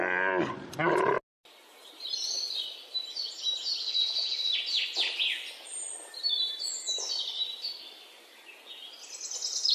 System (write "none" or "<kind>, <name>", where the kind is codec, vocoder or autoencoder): none